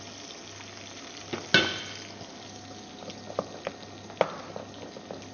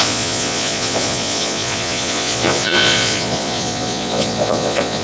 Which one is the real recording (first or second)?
first